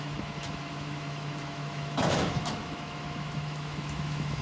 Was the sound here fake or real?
fake